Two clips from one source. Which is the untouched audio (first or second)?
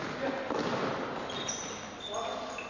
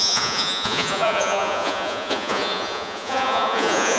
first